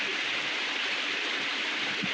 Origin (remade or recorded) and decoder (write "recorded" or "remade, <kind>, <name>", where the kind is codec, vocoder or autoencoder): recorded